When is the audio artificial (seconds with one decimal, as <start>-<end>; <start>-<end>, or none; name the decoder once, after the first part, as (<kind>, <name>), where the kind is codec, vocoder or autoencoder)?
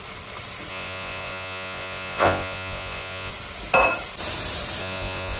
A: 0.7-3.3 (vocoder, Vocos); 4.8-5.4